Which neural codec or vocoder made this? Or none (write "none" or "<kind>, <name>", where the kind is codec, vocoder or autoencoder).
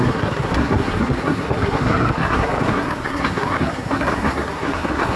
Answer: codec, SNAC